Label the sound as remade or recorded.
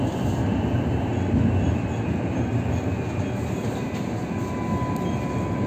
recorded